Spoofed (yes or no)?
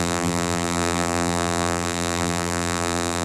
yes